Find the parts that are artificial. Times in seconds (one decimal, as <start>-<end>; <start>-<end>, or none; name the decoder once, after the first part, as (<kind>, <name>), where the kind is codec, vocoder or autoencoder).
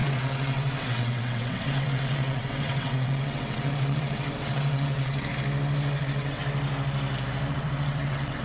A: 0.0-5.3 (vocoder, WaveNeXt); 6.0-6.4; 7.5-8.4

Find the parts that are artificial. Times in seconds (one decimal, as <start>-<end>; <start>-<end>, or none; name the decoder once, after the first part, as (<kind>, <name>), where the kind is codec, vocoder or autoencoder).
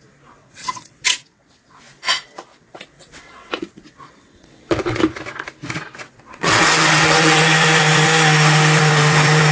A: 0.4-1.8 (vocoder, WaveNeXt); 2.5-5.0; 6.0-7.5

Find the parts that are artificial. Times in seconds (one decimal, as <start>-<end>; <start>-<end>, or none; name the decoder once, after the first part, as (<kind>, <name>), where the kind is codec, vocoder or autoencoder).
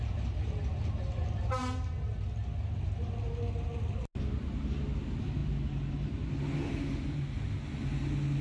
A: none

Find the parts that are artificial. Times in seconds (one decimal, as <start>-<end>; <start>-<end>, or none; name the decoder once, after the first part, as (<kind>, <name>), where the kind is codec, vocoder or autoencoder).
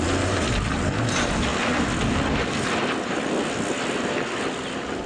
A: none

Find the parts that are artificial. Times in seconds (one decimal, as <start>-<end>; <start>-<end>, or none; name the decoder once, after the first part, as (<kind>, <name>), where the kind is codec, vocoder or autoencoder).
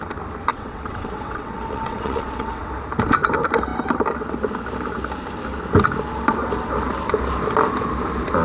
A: 0.5-2.7 (vocoder, WaveNeXt)